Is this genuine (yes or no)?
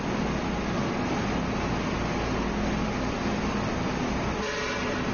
yes